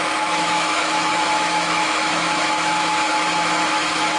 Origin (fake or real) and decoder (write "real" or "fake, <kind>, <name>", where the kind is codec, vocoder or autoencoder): fake, autoencoder, DAC-VAE